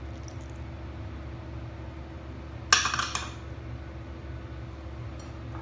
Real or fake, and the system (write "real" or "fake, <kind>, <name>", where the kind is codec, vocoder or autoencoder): real